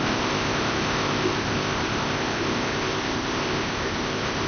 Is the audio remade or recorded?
remade